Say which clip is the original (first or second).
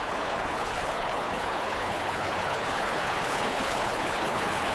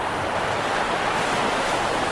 second